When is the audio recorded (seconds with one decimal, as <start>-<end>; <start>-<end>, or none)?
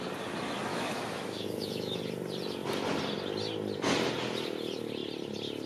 0.0-0.7; 2.0-5.7